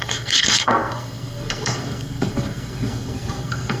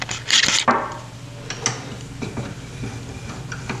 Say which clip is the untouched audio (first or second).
second